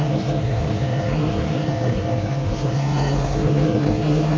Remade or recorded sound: remade